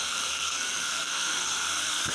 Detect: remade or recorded remade